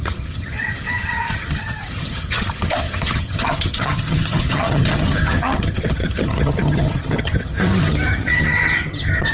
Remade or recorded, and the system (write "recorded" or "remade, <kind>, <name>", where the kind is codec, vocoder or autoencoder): remade, vocoder, HiFi-GAN